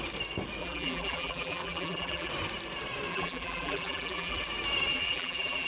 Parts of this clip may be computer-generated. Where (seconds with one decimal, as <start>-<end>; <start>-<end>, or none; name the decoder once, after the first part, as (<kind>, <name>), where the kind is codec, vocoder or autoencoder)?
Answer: 0.6-2.3 (vocoder, BigVGAN v2); 3.1-4.4; 4.9-5.7